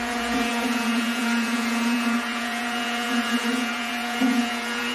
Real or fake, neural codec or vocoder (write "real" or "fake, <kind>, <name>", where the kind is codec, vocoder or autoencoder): fake, vocoder, Vocos